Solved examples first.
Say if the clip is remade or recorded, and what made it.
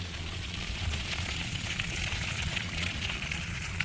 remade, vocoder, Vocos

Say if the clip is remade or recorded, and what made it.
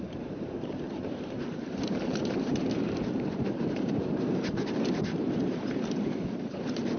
remade, vocoder, BigVGAN v2